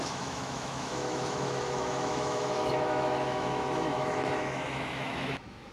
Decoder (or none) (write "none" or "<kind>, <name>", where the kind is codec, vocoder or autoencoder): autoencoder, DAC-VAE